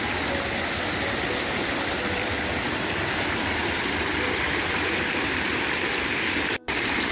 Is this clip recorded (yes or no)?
no